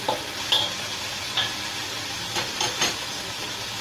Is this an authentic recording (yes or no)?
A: yes